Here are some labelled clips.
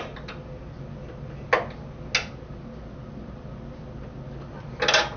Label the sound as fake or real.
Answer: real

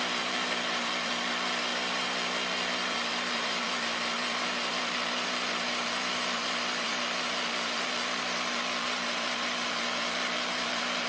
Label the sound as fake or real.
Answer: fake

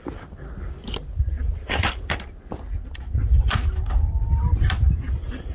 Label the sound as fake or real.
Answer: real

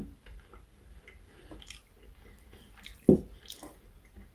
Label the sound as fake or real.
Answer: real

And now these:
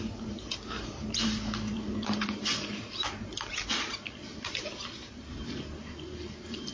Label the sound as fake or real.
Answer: fake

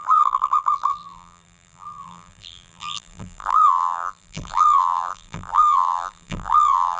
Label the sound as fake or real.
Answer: fake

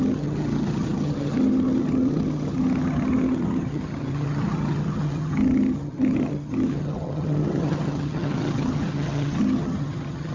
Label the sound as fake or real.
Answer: fake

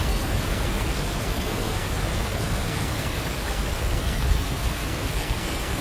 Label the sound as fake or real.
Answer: fake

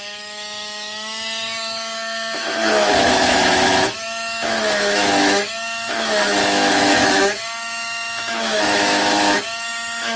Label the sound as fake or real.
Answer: fake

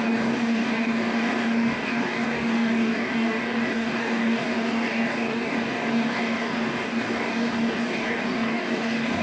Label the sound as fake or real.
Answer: fake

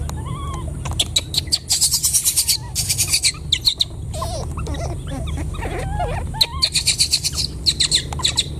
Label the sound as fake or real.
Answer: real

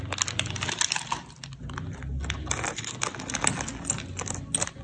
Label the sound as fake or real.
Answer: real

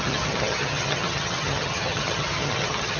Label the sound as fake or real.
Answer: fake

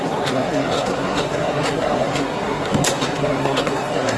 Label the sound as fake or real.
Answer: fake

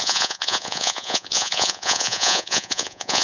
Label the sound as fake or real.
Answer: fake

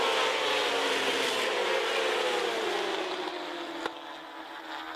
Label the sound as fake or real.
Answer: real